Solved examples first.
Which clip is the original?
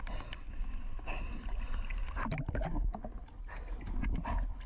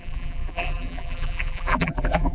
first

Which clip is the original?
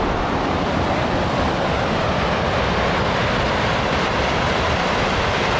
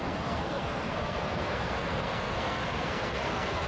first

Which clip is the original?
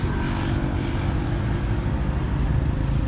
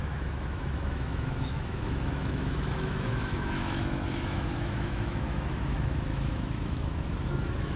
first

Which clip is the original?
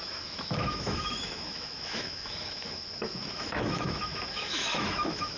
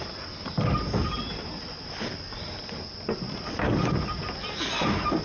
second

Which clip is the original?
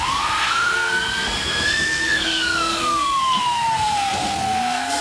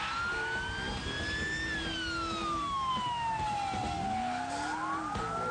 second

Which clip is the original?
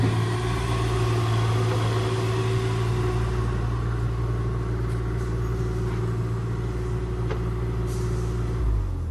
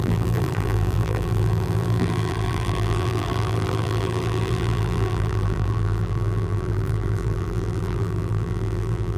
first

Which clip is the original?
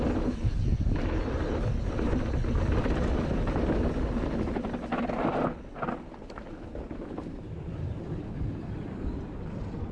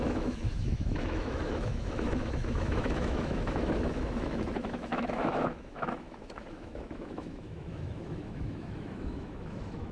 first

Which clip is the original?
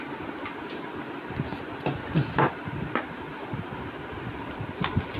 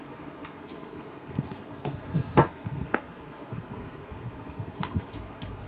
first